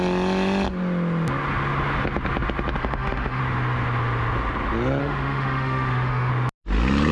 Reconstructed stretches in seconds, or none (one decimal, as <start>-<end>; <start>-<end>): 2.8-3.4; 5.0-6.3